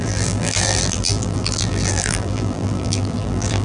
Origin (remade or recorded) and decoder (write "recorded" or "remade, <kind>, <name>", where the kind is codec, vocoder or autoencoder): remade, vocoder, BigVGAN v2